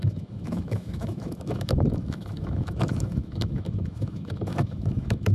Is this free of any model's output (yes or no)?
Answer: no